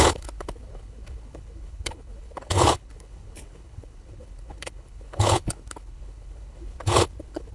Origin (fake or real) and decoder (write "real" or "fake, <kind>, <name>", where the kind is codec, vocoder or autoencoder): fake, codec, HILCodec